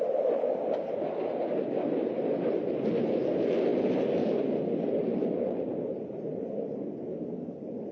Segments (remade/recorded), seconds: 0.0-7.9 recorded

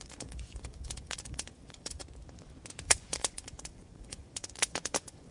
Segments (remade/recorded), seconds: 0.0-2.0 remade; 2.0-2.8 recorded; 2.8-5.3 remade

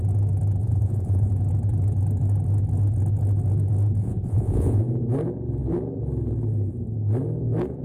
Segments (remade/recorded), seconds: 0.0-0.6 recorded; 0.6-1.3 remade; 1.3-4.0 recorded; 4.0-4.8 remade; 4.8-7.8 recorded

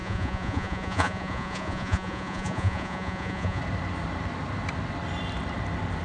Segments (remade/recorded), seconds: 0.0-3.6 remade; 3.6-6.0 recorded

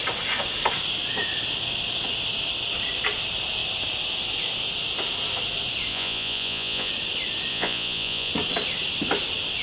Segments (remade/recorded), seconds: 0.0-5.9 recorded; 5.9-6.9 remade; 6.9-7.5 recorded; 7.5-8.3 remade; 8.3-9.6 recorded

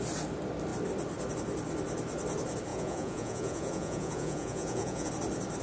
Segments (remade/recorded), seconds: 0.0-2.7 recorded; 2.7-5.1 remade; 5.1-5.6 recorded

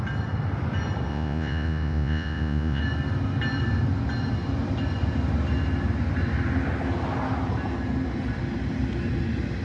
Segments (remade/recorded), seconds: 0.0-1.1 recorded; 1.1-2.8 remade; 2.8-9.6 recorded